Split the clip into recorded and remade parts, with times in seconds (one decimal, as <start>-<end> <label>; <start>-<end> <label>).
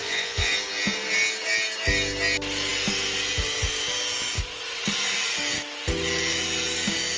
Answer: 0.0-0.5 remade; 0.5-7.2 recorded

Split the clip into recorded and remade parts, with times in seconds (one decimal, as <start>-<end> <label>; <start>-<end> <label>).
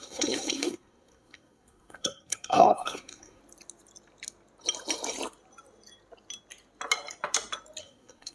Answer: 0.0-3.4 remade; 3.4-7.8 recorded; 7.8-8.3 remade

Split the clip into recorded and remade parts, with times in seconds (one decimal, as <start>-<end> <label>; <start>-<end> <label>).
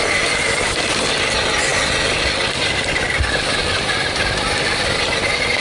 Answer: 0.0-5.6 recorded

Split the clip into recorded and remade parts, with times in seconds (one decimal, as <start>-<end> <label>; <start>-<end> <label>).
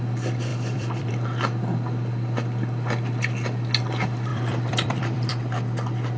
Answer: 0.0-0.5 recorded; 0.5-1.1 remade; 1.1-4.3 recorded; 4.3-5.3 remade; 5.3-6.2 recorded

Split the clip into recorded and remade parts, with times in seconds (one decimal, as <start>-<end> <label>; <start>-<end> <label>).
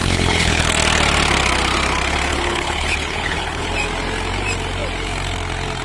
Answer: 0.0-0.7 remade; 0.7-2.3 recorded; 2.3-3.7 remade; 3.7-5.8 recorded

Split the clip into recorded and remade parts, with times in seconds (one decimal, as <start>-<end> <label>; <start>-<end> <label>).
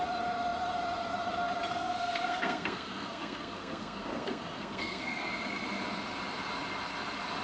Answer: 0.0-1.7 recorded; 1.7-5.2 remade; 5.2-7.4 recorded